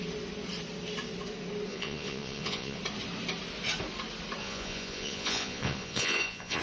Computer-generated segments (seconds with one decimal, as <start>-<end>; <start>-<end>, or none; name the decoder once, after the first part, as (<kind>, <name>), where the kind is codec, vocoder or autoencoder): 1.7-2.8 (vocoder, Vocos); 4.4-6.6